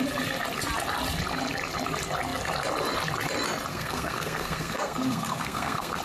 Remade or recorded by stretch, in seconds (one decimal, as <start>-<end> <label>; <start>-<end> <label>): 0.0-3.7 recorded; 3.7-6.0 remade